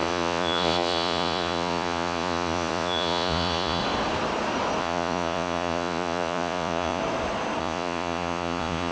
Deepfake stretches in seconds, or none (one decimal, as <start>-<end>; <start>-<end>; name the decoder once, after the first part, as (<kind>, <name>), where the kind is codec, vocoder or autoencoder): 0.0-3.8 (vocoder, Vocos); 4.8-7.0; 7.6-8.9